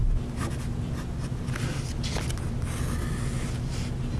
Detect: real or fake real